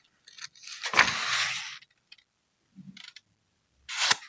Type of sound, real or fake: real